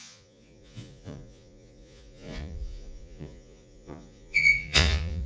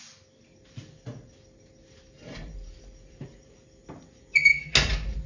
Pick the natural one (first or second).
second